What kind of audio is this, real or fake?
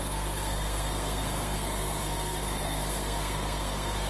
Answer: fake